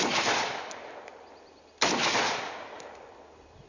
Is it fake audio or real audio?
real